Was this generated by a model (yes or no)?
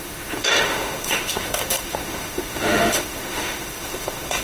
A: yes